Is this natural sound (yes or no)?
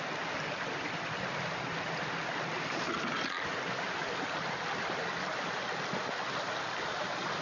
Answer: yes